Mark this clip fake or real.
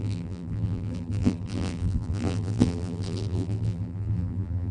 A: fake